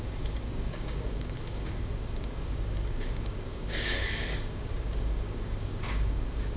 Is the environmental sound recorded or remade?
remade